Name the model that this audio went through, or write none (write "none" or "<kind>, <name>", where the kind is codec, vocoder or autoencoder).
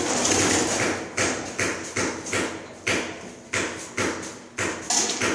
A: none